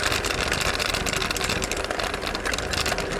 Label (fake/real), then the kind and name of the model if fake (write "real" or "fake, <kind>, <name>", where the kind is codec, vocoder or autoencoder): real